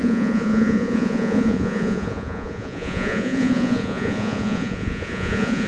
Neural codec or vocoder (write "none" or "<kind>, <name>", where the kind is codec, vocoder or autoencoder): vocoder, Vocos